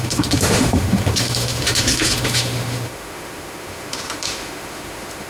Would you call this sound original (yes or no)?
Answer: no